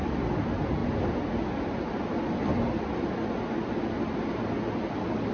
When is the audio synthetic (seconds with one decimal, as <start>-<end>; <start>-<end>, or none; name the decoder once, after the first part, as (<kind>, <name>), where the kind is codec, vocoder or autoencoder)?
none